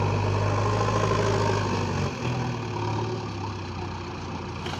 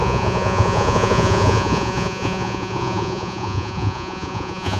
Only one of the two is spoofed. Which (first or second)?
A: second